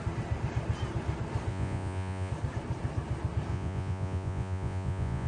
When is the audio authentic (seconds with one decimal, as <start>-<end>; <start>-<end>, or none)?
0.0-1.5; 2.3-3.5